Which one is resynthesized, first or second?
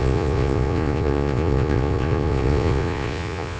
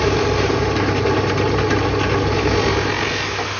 first